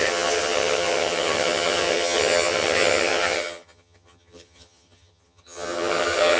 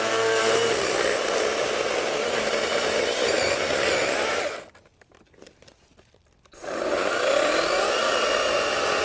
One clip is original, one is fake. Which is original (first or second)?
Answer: second